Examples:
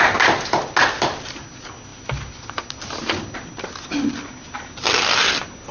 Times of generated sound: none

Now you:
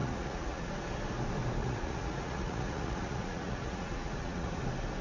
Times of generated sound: 0.0-0.7 (vocoder, Vocos); 1.6-4.6

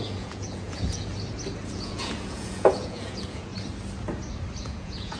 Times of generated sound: 0.0-1.1 (vocoder, Vocos); 1.7-3.5; 4.6-5.2

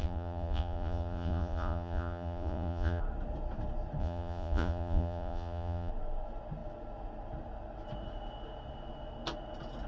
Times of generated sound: 0.0-3.0 (vocoder, Vocos); 4.0-5.9

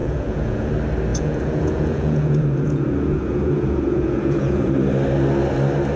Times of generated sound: 0.0-0.7 (vocoder, Vocos); 1.1-4.7